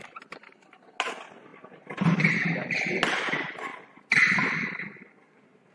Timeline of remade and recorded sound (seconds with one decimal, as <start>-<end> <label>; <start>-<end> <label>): 0.0-1.5 recorded; 1.5-3.0 remade; 3.0-5.7 recorded